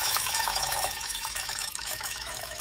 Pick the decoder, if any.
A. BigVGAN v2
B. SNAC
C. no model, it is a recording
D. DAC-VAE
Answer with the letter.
D